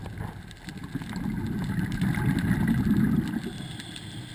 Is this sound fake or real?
real